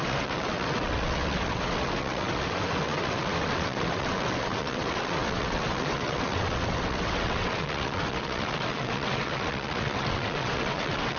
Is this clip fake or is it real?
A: fake